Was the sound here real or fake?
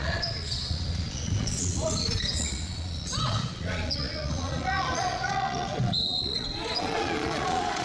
fake